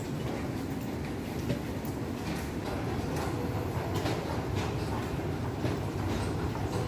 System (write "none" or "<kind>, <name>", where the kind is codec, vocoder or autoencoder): none